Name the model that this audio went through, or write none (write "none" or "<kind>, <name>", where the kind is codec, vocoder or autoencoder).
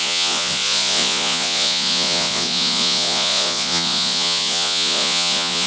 vocoder, Vocos